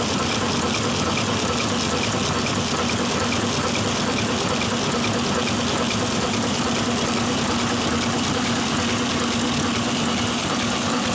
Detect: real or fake real